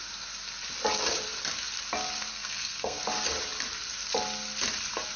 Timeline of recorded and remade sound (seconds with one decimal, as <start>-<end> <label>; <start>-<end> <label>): 0.0-2.3 recorded; 2.3-3.0 remade; 3.0-5.2 recorded